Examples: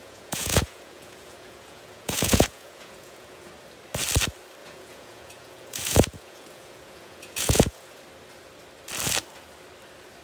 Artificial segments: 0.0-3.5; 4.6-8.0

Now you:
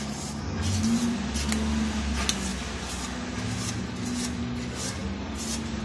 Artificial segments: none

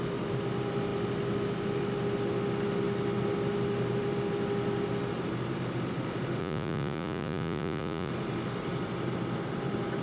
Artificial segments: 6.4-8.1

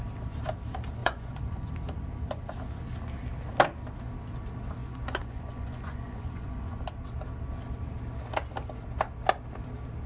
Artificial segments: 1.0-1.7; 4.8-6.8

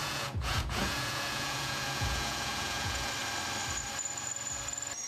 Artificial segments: 0.0-3.1

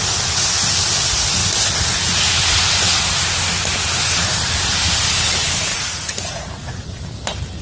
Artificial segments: 5.7-7.0

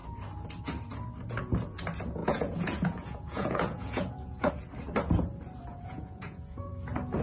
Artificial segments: 2.2-4.5; 5.7-6.7

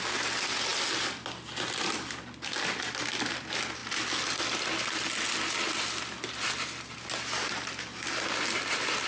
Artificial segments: none